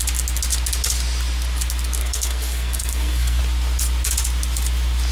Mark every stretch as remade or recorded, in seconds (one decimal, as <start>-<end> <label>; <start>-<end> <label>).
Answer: 0.0-2.0 recorded; 2.0-3.4 remade; 3.4-5.1 recorded